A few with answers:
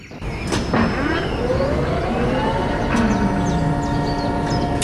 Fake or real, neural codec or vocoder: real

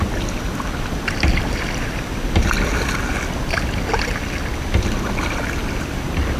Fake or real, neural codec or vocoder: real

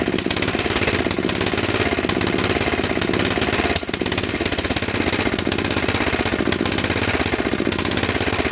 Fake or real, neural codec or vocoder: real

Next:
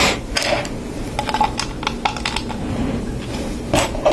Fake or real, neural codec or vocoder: real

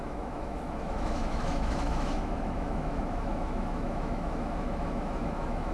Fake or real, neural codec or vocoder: fake, autoencoder, DAC-VAE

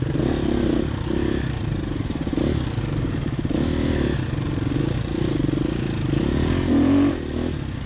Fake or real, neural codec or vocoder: real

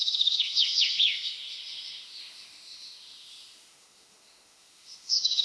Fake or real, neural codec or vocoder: fake, autoencoder, DAC-VAE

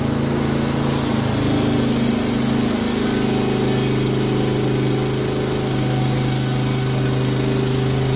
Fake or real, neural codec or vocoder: real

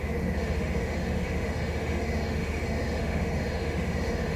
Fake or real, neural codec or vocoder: fake, autoencoder, DAC-VAE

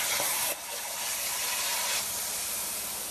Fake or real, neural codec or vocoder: real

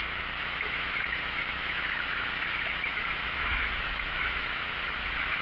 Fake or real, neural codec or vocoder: fake, autoencoder, DAC-VAE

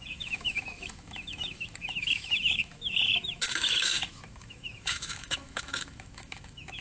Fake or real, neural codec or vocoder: fake, autoencoder, DAC-VAE